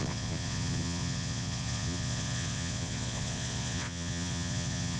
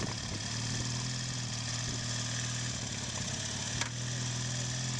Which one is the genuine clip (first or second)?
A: second